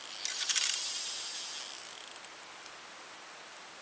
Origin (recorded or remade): recorded